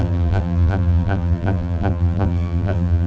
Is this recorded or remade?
remade